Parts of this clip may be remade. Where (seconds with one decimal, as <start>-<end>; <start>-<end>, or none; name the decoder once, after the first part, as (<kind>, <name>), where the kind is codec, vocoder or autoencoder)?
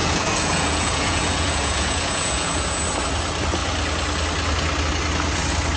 0.0-2.8 (vocoder, Vocos)